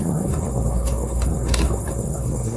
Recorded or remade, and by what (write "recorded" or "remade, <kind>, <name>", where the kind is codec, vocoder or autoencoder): remade, codec, SNAC